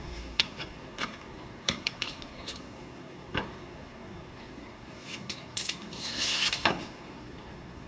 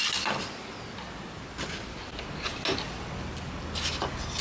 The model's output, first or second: first